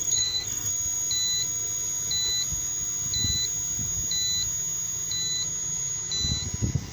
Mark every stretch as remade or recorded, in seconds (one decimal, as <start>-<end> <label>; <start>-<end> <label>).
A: 0.0-0.7 remade; 0.7-6.9 recorded